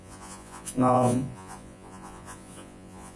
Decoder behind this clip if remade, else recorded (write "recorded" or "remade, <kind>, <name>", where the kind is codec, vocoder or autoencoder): remade, vocoder, Vocos